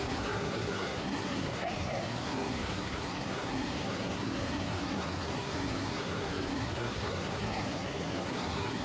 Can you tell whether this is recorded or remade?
remade